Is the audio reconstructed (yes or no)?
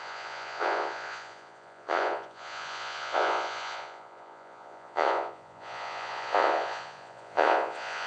yes